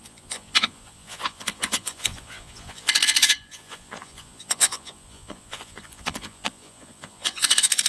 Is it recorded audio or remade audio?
remade